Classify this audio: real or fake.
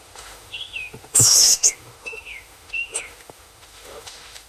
fake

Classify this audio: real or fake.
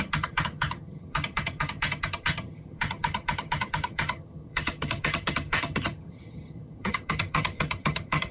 fake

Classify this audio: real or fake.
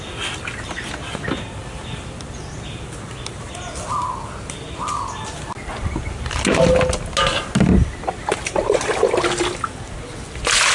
real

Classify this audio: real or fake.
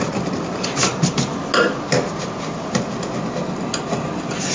real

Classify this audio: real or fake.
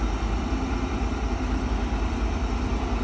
real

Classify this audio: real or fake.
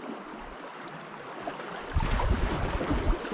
real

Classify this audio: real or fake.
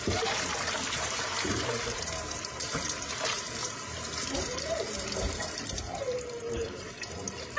fake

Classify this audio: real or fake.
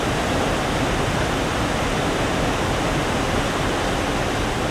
real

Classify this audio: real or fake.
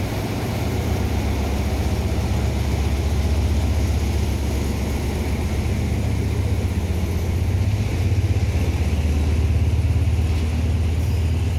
real